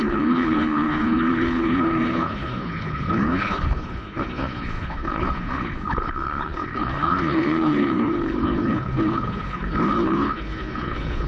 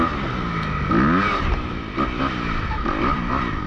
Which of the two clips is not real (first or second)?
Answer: first